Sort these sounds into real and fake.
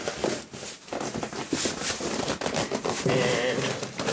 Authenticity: fake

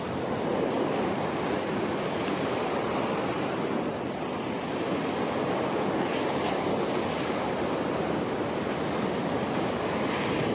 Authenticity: real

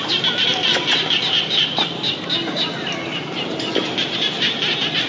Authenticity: real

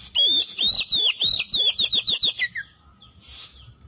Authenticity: real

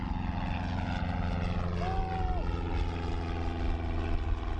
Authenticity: real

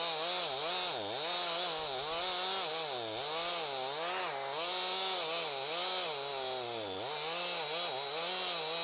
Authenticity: real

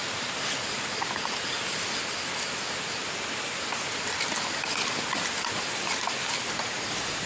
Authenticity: real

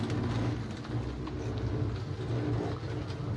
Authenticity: real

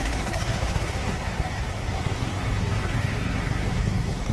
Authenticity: fake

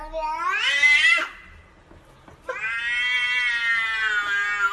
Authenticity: real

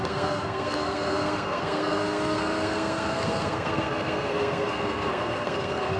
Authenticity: fake